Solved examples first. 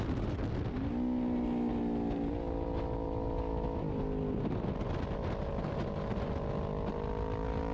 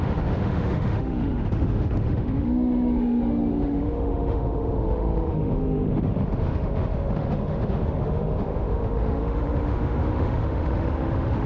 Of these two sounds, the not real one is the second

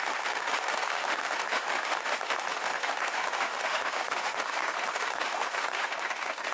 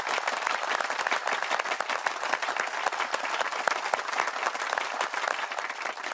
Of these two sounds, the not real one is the first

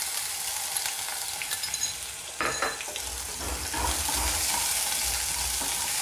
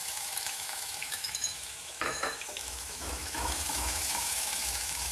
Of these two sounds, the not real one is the second